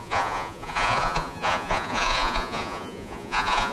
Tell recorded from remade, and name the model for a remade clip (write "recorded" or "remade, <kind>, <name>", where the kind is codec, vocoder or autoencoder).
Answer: remade, vocoder, Vocos